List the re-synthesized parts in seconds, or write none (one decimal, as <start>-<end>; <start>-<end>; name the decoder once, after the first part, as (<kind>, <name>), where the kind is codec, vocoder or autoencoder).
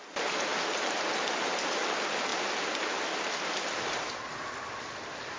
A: none